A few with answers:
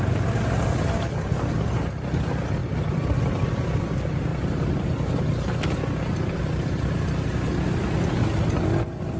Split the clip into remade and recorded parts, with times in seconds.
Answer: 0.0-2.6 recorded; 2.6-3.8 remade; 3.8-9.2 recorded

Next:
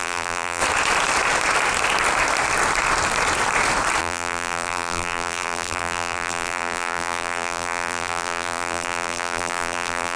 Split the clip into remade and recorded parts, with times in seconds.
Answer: 0.0-0.6 remade; 0.6-4.0 recorded; 4.0-10.2 remade

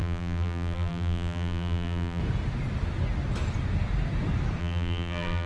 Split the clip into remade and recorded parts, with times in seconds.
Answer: 0.0-2.2 remade; 2.2-4.6 recorded; 4.6-5.5 remade

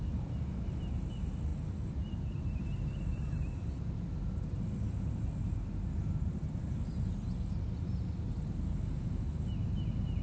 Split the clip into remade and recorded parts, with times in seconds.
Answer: 0.0-1.5 recorded; 1.5-2.6 remade; 2.6-3.1 recorded; 3.1-3.7 remade; 3.7-10.2 recorded

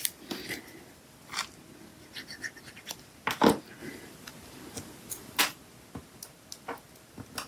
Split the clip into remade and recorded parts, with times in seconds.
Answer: 0.0-3.8 recorded; 3.8-5.4 remade; 5.4-7.5 recorded

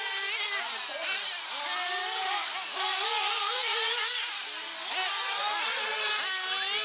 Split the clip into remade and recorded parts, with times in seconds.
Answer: 0.0-6.8 recorded

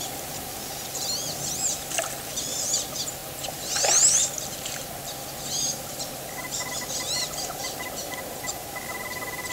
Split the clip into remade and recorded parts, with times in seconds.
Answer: 0.0-3.2 remade; 3.2-5.2 recorded; 5.2-9.5 remade